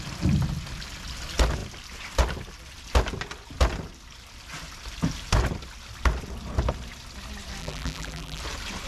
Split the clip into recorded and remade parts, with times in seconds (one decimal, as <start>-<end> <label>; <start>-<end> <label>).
0.0-7.6 recorded; 7.6-8.4 remade; 8.4-8.9 recorded